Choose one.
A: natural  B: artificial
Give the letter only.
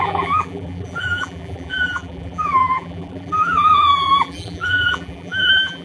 B